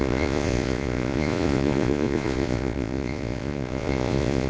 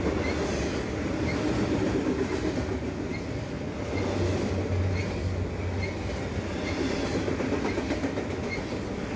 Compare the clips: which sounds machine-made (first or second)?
first